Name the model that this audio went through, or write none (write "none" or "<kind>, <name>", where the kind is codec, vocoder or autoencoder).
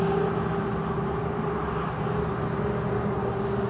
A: none